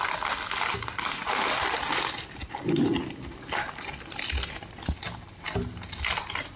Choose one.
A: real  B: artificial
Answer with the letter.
A